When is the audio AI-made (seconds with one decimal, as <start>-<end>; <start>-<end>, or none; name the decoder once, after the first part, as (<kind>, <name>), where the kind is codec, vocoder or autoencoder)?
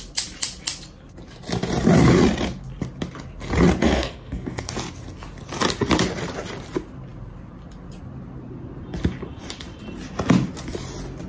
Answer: 3.8-4.7 (codec, SNAC)